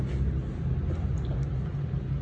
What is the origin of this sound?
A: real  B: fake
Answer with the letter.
A